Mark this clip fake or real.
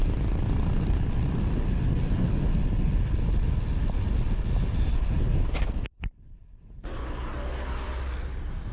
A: real